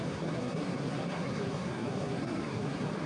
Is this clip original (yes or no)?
no